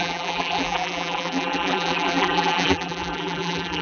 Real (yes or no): no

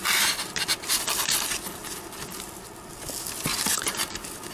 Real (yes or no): yes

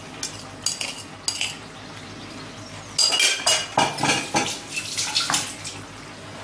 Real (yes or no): yes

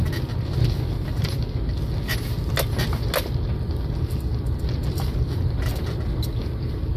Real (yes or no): yes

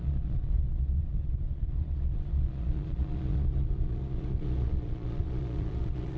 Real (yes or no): no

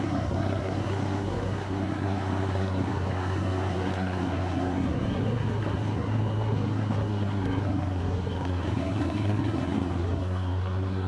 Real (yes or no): no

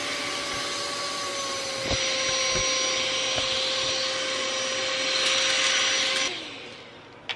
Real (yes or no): yes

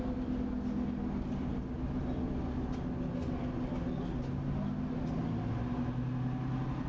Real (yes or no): yes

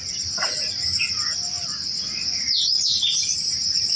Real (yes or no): yes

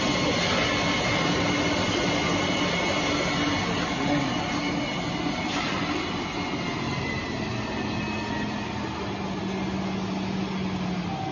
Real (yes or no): yes